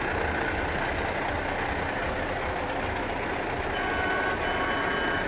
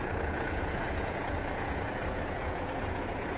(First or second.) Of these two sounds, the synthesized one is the second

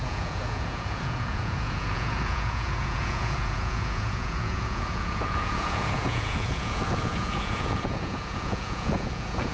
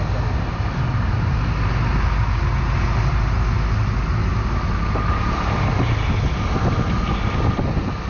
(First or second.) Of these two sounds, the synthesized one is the first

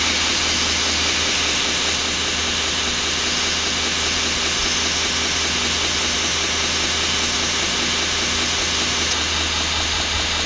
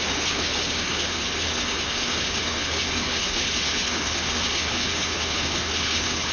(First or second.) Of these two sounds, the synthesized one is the second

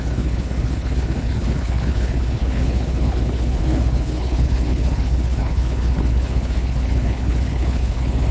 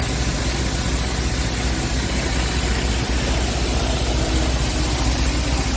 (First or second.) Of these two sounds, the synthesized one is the first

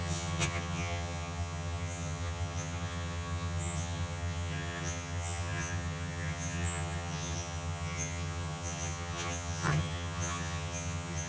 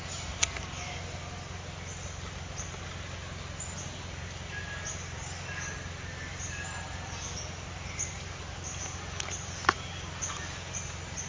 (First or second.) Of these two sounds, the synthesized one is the first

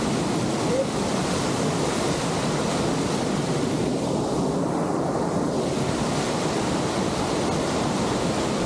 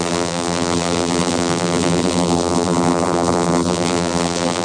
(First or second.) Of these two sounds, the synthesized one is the second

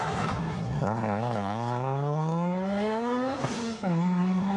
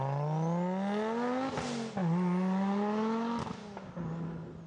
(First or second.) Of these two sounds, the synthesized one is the first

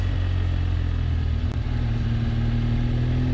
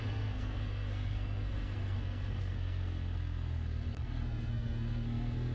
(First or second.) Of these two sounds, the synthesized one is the second